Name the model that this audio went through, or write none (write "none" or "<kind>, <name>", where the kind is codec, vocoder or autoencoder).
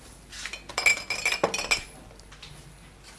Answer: none